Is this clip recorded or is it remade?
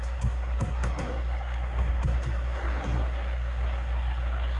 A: remade